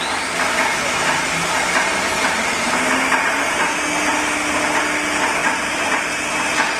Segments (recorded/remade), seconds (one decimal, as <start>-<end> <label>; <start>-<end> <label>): 0.0-6.8 recorded